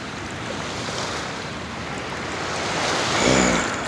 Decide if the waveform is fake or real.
real